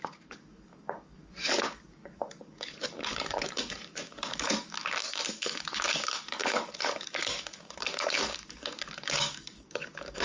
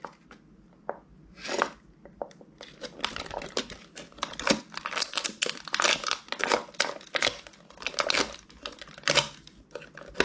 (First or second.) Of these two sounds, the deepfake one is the first